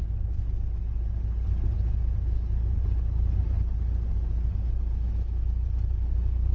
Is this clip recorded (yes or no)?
yes